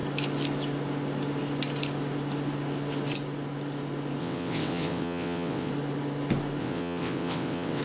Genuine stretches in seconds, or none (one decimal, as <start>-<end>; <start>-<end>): 0.0-4.2; 5.7-6.6